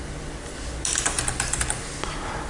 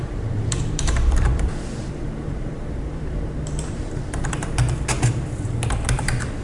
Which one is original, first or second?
first